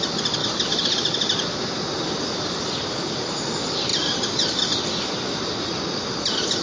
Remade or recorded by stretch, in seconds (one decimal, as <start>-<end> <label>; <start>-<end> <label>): 0.0-6.6 recorded

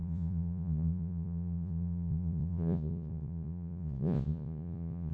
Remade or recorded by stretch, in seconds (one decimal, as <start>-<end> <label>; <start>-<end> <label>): 0.0-5.1 remade

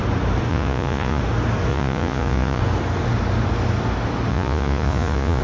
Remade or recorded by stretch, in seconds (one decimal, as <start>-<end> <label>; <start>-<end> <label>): 0.0-0.5 recorded; 0.5-1.2 remade; 1.2-1.7 recorded; 1.7-2.6 remade; 2.6-4.3 recorded; 4.3-5.4 remade

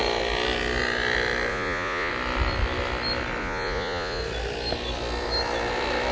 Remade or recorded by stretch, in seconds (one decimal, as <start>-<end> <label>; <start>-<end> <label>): 0.0-1.5 recorded; 1.5-2.1 remade; 2.1-3.4 recorded; 3.4-4.2 remade; 4.2-6.1 recorded

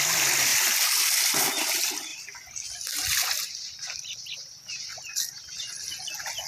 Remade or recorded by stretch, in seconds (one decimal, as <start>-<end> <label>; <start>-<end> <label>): 0.0-6.5 recorded